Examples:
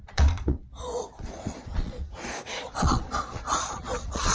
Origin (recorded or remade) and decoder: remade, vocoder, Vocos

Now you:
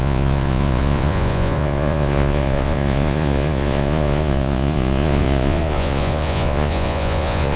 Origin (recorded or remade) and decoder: remade, vocoder, Vocos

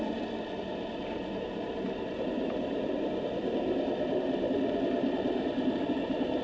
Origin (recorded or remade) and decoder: remade, vocoder, BigVGAN v2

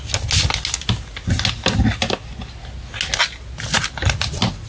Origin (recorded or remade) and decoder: recorded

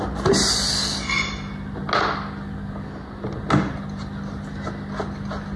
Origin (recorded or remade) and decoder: recorded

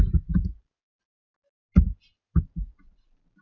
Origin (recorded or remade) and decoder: recorded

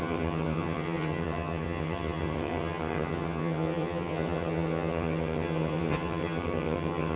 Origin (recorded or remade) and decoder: remade, vocoder, HiFi-GAN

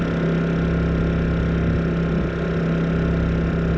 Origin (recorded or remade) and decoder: recorded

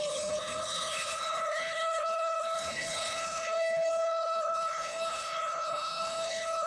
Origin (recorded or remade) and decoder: remade, codec, HILCodec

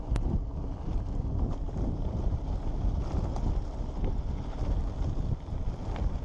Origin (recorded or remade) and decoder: recorded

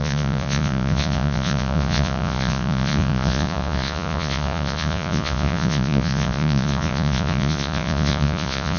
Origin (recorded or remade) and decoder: remade, vocoder, Vocos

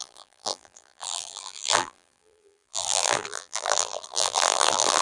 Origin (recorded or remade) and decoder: remade, vocoder, BigVGAN v2